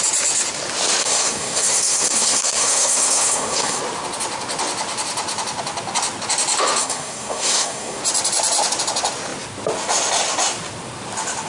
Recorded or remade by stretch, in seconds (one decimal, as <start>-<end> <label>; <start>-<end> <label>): 0.0-1.0 recorded; 1.0-3.8 remade; 3.8-6.8 recorded; 6.8-8.0 remade; 8.0-11.5 recorded